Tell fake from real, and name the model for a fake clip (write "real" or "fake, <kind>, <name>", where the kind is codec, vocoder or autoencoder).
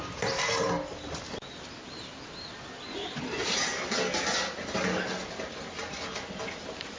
real